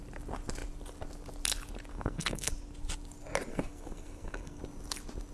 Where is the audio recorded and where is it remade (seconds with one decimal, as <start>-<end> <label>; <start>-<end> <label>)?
0.0-1.9 recorded; 1.9-2.5 remade; 2.5-3.5 recorded; 3.5-4.6 remade; 4.6-5.3 recorded